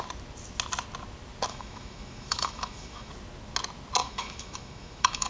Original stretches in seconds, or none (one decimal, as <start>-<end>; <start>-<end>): 0.0-1.5; 3.1-4.0